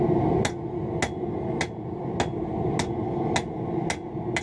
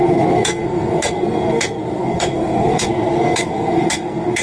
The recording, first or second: first